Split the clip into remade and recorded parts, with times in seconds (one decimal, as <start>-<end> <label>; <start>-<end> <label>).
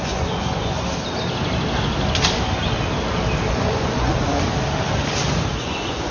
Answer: 0.0-0.9 remade; 0.9-3.5 recorded; 3.5-4.1 remade; 4.1-5.6 recorded; 5.6-6.1 remade